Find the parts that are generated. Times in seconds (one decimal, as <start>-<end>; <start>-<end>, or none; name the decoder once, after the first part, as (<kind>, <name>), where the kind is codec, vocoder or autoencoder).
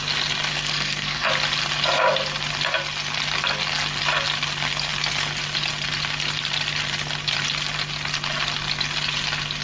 0.5-1.3 (codec, SNAC)